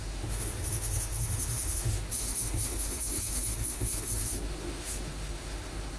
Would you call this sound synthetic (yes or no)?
yes